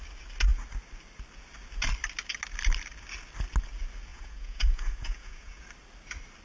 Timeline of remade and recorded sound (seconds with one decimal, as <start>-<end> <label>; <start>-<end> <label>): 0.0-4.1 recorded; 4.1-5.6 remade; 5.6-6.4 recorded